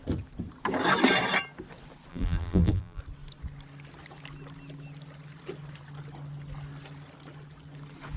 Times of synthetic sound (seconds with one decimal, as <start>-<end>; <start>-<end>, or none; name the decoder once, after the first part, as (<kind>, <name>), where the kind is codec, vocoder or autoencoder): 2.1-3.0 (vocoder, BigVGAN v2)